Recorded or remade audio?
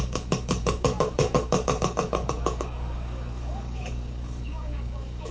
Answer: remade